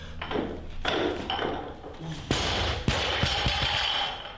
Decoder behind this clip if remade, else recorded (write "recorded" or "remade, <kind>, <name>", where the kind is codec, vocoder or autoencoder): recorded